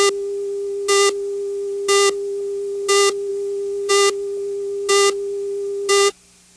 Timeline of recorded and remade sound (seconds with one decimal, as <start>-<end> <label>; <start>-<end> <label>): 0.0-6.6 recorded